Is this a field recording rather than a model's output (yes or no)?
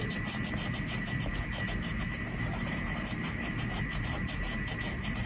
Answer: no